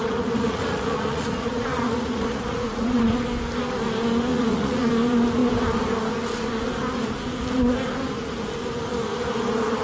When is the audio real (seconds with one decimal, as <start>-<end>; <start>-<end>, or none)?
3.1-4.3; 4.9-9.8